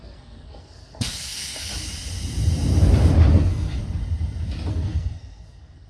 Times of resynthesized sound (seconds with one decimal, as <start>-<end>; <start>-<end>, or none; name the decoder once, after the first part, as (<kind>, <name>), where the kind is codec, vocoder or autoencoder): 0.0-1.7 (codec, SNAC); 3.3-3.8; 4.7-5.9